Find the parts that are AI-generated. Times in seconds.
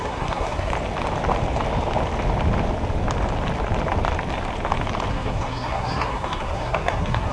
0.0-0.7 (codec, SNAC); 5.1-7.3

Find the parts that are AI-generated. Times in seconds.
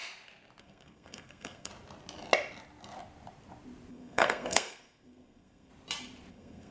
0.6-1.7 (codec, SNAC); 3.9-5.7; 6.3-6.7